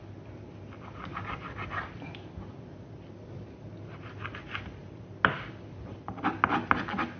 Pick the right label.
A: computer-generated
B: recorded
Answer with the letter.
B